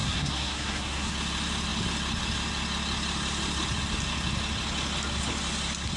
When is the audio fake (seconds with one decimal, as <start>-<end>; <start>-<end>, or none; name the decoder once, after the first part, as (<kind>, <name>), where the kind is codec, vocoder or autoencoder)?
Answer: 0.0-1.1 (codec, SNAC)